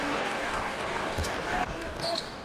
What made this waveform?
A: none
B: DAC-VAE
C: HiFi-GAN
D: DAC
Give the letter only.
D